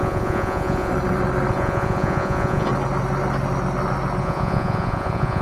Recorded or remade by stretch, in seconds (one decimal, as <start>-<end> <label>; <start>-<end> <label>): 0.0-0.9 remade; 0.9-1.5 recorded; 1.5-2.7 remade; 2.7-4.2 recorded; 4.2-5.4 remade